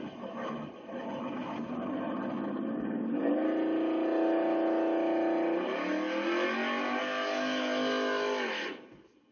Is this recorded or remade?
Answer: recorded